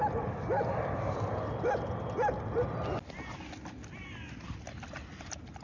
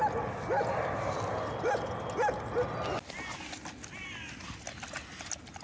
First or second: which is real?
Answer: second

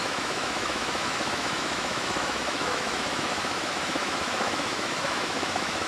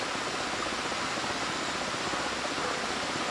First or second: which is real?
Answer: second